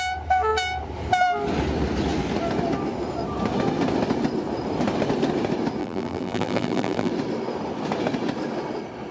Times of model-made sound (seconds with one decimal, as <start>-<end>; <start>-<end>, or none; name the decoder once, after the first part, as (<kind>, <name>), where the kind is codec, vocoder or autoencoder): 5.8-7.1 (vocoder, BigVGAN v2)